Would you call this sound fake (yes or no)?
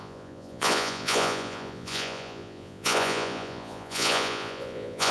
yes